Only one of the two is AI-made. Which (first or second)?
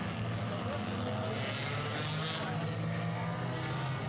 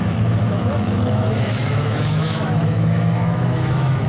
second